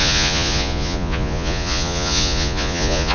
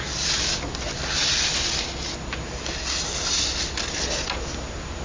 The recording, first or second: second